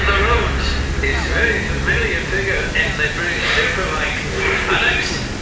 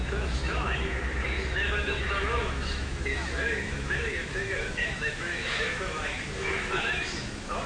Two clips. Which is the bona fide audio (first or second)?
first